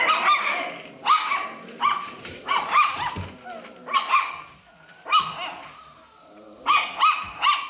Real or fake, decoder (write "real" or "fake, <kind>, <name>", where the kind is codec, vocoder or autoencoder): real